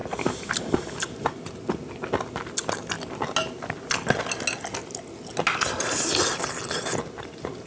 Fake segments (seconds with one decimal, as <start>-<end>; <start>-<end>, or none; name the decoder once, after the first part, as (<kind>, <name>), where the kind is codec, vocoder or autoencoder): none